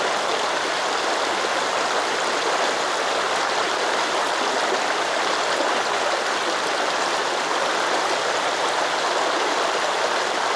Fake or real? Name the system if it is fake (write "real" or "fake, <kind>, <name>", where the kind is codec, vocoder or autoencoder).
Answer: real